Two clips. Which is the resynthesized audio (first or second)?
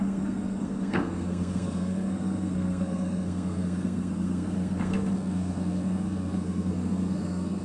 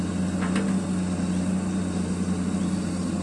first